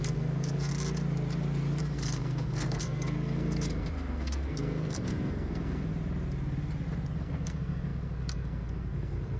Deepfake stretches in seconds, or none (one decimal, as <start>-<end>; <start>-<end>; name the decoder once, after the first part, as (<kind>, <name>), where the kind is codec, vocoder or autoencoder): 0.0-0.7 (codec, SNAC); 1.8-5.9; 7.2-9.4